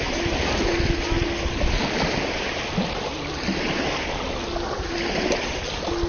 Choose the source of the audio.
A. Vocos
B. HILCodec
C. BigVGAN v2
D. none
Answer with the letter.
D